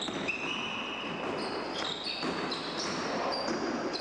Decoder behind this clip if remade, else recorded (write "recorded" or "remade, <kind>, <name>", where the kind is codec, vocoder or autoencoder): recorded